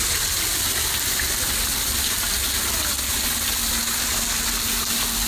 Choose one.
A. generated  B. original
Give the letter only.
B